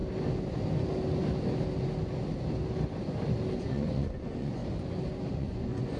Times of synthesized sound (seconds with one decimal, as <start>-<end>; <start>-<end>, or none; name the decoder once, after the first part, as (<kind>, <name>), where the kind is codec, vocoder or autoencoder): 3.6-4.6 (vocoder, Vocos); 5.3-6.0

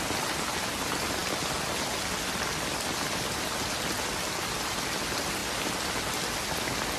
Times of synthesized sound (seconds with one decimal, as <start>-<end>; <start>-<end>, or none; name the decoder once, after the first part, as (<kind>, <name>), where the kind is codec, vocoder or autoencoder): none

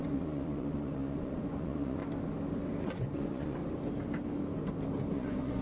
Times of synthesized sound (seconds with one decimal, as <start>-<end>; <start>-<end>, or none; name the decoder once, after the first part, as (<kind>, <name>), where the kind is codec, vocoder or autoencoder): 0.0-2.0 (vocoder, Vocos); 2.8-3.6; 5.1-5.6

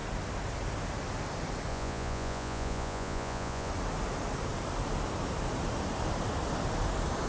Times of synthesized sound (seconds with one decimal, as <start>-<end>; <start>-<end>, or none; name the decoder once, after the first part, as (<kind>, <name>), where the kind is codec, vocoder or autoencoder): 1.7-3.7 (vocoder, Vocos)

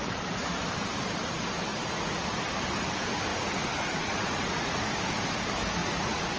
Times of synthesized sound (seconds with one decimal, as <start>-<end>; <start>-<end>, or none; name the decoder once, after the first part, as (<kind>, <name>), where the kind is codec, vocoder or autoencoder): 1.7-2.2 (vocoder, Vocos); 3.3-4.9; 5.8-6.4

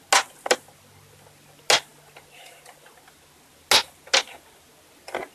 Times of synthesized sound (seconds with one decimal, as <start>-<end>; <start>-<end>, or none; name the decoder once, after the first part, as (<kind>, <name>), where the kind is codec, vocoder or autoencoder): none

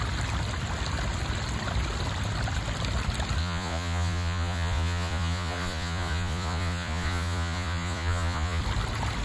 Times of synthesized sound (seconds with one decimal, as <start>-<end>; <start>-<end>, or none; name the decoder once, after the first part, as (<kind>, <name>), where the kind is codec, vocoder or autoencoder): 3.4-8.6 (vocoder, Vocos)

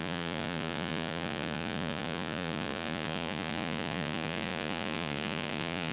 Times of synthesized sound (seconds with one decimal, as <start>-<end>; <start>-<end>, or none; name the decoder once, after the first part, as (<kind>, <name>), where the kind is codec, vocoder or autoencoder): 0.0-5.9 (vocoder, Vocos)